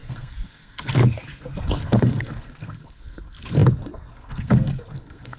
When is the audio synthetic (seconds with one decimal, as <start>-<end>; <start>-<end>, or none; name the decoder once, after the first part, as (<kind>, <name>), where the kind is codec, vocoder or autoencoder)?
0.0-5.4 (codec, SNAC)